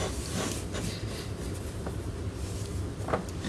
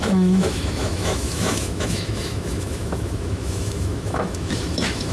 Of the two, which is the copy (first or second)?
second